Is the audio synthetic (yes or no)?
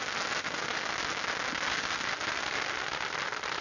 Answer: no